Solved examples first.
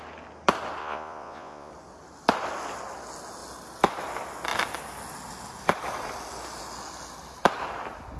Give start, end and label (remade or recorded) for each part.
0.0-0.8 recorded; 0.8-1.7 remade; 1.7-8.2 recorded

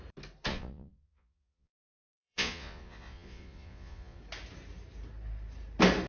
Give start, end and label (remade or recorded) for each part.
0.0-0.5 recorded; 0.5-4.2 remade; 4.2-6.1 recorded

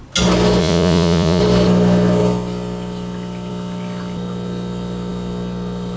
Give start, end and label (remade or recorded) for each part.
0.0-0.6 recorded; 0.6-1.4 remade; 1.4-6.0 recorded

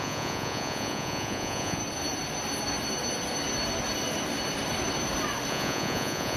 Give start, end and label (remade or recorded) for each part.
0.0-1.8 remade; 1.8-5.5 recorded; 5.5-6.4 remade

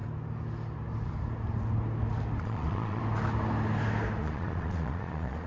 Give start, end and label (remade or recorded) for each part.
0.0-2.4 recorded; 2.4-3.0 remade; 3.0-4.2 recorded; 4.2-5.5 remade

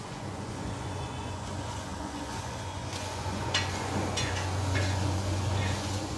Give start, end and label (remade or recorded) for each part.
0.0-6.2 remade

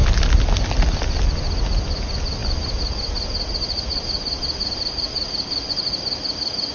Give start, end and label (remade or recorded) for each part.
0.0-6.7 recorded